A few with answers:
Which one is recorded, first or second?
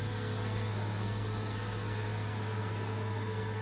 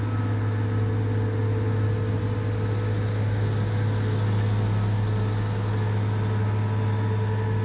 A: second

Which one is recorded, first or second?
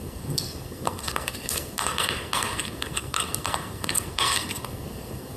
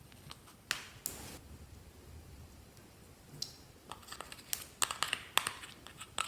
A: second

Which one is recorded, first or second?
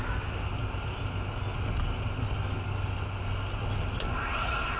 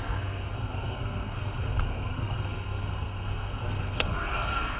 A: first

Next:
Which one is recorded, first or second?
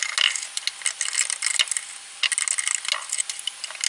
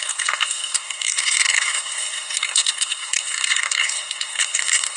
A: first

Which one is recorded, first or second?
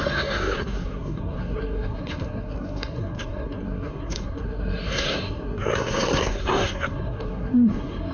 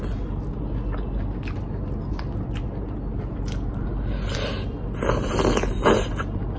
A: second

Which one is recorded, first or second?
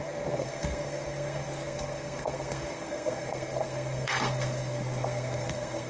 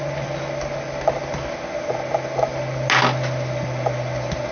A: second